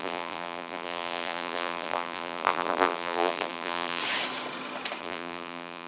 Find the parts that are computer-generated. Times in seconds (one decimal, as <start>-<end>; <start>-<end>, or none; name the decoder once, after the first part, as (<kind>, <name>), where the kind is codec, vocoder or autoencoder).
0.0-4.0 (vocoder, BigVGAN v2); 5.0-5.9